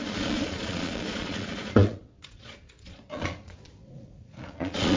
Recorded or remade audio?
remade